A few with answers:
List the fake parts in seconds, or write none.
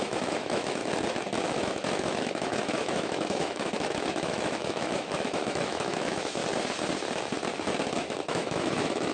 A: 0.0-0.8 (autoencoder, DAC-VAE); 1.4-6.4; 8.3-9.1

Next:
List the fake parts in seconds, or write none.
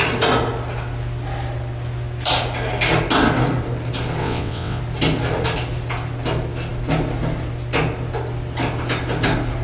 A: 4.2-4.8 (vocoder, WaveNeXt)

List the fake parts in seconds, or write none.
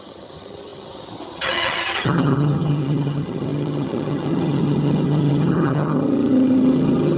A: 0.0-7.2 (vocoder, HiFi-GAN)